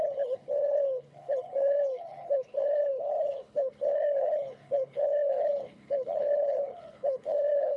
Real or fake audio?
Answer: fake